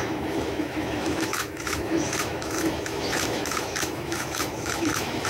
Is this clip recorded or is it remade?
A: remade